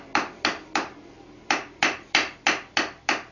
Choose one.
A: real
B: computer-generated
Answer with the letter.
B